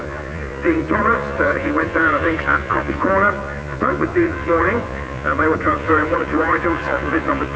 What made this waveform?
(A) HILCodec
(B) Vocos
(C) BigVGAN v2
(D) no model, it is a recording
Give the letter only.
B